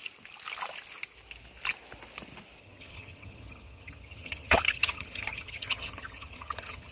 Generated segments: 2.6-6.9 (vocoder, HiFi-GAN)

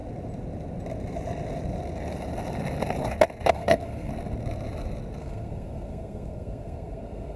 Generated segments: 3.5-4.1 (codec, SNAC); 5.2-7.4

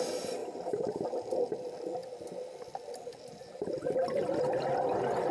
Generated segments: 0.4-1.1 (vocoder, BigVGAN v2)

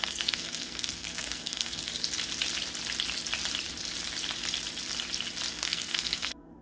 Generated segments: 0.0-1.9 (codec, SNAC); 5.5-6.6

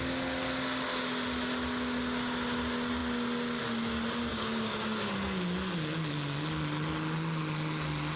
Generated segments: 4.3-5.1 (codec, DAC)

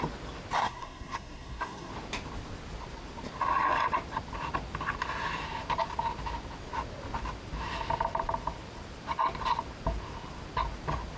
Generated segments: 0.6-1.9 (codec, SNAC)

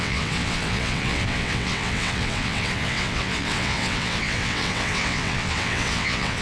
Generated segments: 0.0-6.4 (vocoder, WaveNeXt)